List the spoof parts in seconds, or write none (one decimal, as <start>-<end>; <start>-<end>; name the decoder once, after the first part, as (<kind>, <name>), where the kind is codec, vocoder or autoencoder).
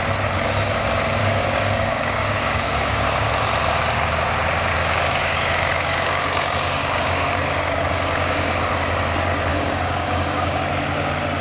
1.2-3.3 (codec, DAC); 4.7-8.5; 9.5-10.6